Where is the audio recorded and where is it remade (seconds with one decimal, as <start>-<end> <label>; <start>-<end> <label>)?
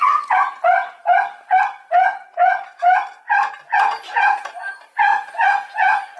0.0-0.7 remade; 0.7-1.9 recorded; 1.9-2.9 remade; 2.9-3.8 recorded; 3.8-5.1 remade; 5.1-5.7 recorded; 5.7-6.2 remade